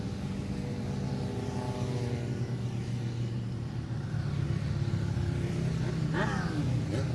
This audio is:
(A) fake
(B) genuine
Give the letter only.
B